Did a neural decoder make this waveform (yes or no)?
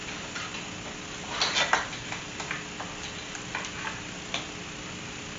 no